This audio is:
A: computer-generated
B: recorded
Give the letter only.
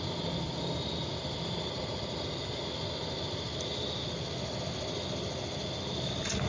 B